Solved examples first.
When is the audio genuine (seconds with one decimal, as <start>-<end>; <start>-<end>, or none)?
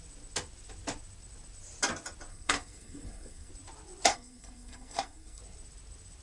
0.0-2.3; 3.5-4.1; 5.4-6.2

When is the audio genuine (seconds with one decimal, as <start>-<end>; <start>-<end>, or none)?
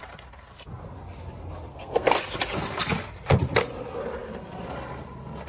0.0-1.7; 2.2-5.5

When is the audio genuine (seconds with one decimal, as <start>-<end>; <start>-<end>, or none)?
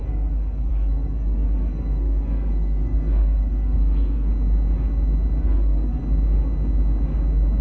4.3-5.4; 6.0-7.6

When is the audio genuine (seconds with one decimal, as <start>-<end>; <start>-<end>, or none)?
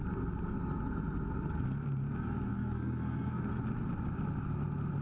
0.0-2.5; 3.4-5.0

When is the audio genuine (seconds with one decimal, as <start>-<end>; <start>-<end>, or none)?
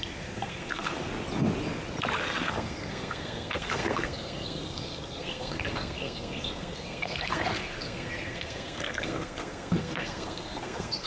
1.1-2.2